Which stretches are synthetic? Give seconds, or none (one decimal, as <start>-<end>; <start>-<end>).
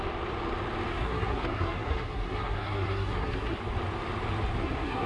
0.9-3.6; 4.6-5.1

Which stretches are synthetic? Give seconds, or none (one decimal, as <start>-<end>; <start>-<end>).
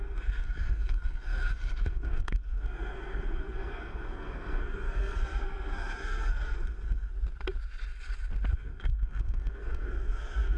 0.0-7.1; 8.5-10.6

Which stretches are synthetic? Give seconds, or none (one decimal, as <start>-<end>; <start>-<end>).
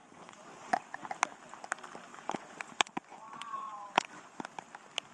0.0-0.8; 2.1-4.4